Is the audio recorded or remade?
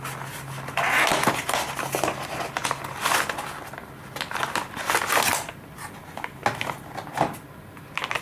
recorded